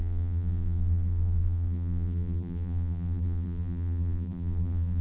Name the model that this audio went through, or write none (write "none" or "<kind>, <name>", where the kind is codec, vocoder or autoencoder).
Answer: vocoder, BigVGAN v2